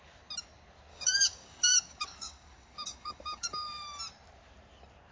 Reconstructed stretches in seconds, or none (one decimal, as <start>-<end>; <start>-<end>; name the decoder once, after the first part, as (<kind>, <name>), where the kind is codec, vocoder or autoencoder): 0.9-4.0 (codec, DAC)